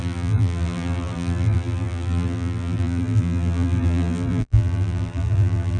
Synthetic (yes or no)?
yes